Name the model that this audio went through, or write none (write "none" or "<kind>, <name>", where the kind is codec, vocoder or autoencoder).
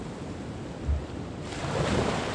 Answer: none